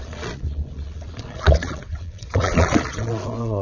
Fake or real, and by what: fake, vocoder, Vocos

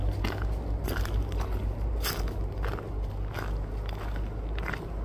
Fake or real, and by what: real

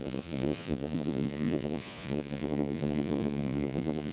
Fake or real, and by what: fake, vocoder, Vocos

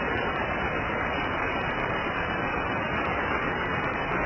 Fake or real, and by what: fake, vocoder, BigVGAN v2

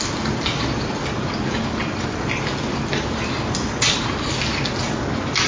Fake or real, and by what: real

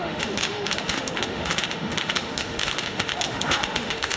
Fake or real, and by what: fake, autoencoder, DAC-VAE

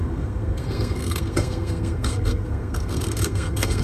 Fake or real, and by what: fake, codec, SNAC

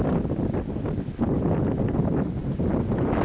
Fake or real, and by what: real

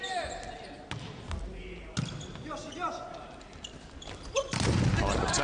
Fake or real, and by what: real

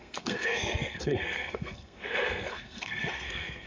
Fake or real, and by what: fake, codec, SNAC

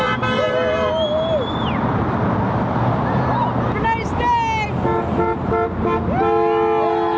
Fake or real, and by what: real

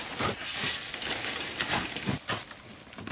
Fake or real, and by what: real